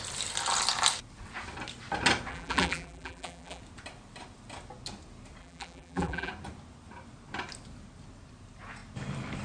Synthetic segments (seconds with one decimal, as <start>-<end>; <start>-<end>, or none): 2.3-3.6; 5.4-6.3